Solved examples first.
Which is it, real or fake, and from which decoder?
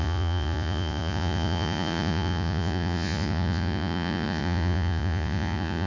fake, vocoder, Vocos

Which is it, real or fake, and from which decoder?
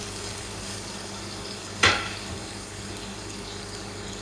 fake, codec, DAC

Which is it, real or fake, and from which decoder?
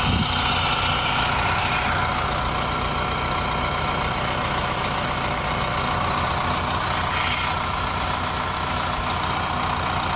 real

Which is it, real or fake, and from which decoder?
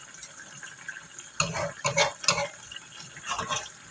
real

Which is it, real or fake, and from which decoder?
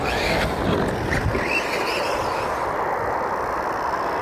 real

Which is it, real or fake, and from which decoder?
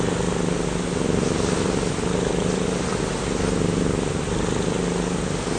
real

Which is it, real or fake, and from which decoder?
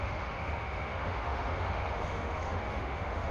fake, autoencoder, DAC-VAE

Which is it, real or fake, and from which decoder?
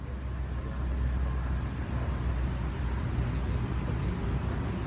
real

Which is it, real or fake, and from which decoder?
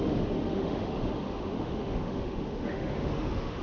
fake, autoencoder, DAC-VAE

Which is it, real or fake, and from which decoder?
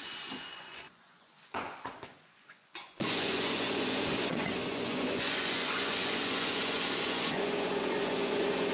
fake, vocoder, Vocos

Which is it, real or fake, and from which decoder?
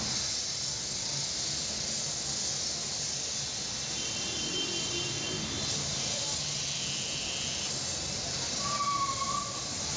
real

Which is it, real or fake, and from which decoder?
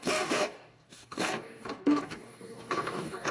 fake, codec, DAC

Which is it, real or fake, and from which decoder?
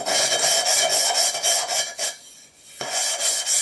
fake, vocoder, Vocos